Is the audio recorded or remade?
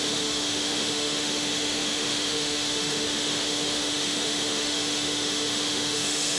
remade